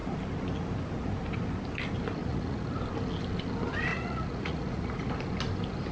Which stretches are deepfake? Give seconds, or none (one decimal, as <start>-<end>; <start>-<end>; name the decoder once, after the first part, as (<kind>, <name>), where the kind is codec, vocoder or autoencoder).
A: 2.2-2.7 (vocoder, Vocos); 3.9-5.1